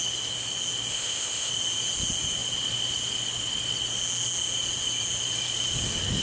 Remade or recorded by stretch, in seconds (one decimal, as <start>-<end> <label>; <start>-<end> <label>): 0.0-0.9 recorded; 0.9-1.5 remade; 1.5-6.2 recorded

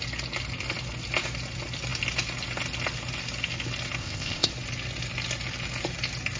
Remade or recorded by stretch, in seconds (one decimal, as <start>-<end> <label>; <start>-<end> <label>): 0.0-4.0 recorded; 4.0-4.5 remade; 4.5-6.4 recorded

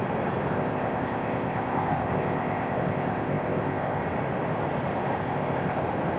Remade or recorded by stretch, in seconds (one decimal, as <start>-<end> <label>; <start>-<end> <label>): 0.0-0.5 recorded; 0.5-4.0 remade; 4.0-5.2 recorded; 5.2-5.8 remade; 5.8-6.2 recorded